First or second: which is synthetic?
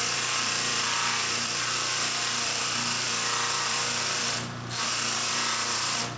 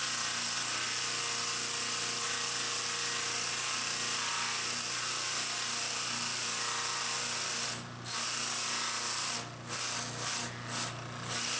first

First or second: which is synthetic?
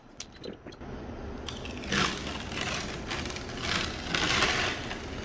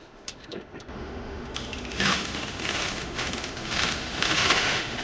second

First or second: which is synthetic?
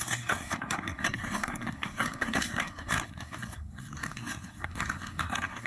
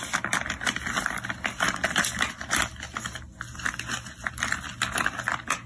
first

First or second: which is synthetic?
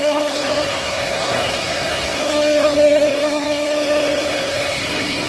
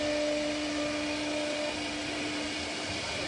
first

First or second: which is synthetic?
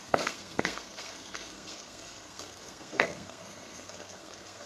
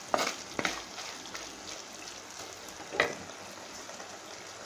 first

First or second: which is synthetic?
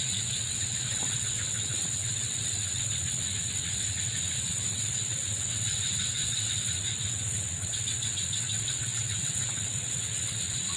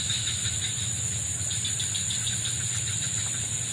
first